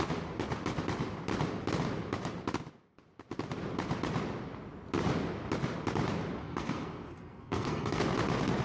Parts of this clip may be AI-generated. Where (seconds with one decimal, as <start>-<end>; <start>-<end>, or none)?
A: 6.4-8.0